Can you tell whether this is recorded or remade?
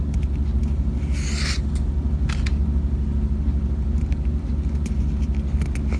recorded